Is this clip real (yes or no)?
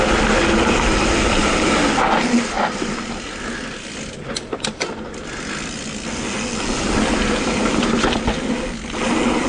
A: yes